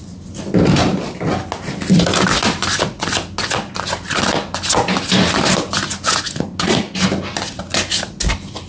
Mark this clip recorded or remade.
recorded